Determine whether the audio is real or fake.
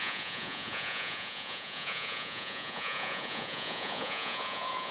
fake